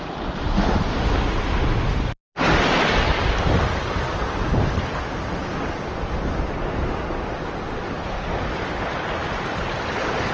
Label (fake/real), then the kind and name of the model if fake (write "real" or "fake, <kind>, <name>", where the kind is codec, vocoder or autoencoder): real